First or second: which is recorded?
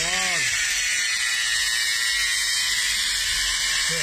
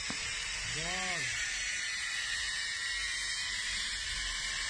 first